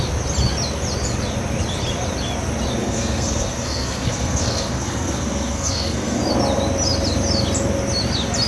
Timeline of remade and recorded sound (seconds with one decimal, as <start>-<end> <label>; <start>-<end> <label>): 0.0-2.8 recorded; 2.8-6.2 remade; 6.2-8.5 recorded